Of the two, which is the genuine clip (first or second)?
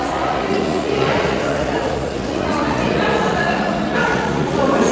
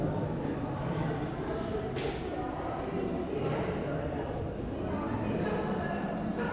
second